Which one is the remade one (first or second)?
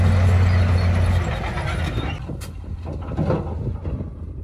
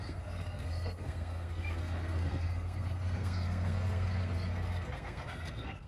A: second